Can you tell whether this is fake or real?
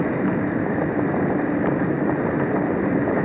real